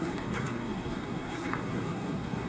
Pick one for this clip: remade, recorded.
remade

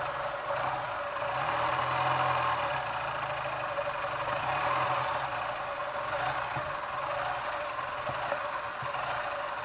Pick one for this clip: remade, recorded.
recorded